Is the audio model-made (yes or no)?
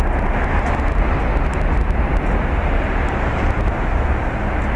no